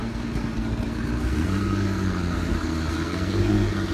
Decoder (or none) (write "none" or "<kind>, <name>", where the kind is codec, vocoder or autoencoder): codec, SNAC